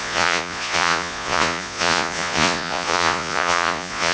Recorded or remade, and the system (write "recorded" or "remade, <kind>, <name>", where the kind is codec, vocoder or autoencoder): remade, vocoder, Vocos